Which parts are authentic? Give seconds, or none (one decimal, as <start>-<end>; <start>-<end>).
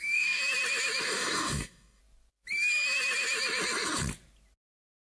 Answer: 0.4-1.0; 2.0-5.1